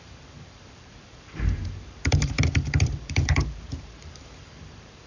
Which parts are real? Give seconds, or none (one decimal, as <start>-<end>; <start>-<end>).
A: none